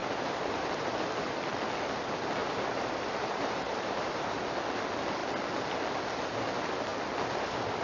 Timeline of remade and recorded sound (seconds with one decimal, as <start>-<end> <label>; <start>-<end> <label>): 0.0-1.0 remade; 1.0-2.4 recorded; 2.4-4.4 remade; 4.4-7.8 recorded